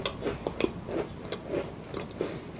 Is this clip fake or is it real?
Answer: real